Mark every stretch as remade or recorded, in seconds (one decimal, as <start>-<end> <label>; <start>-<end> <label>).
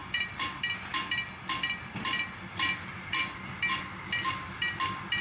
0.0-0.6 remade; 0.6-5.2 recorded